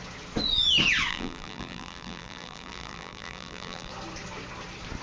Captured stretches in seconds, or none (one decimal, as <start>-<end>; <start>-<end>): 0.0-1.1; 3.9-5.0